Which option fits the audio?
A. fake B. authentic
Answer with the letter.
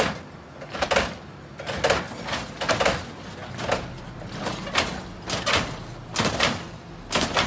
B